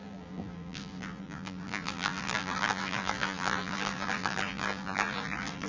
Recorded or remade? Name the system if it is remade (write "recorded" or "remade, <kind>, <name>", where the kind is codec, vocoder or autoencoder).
remade, vocoder, BigVGAN v2